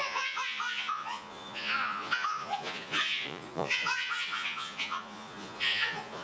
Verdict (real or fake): fake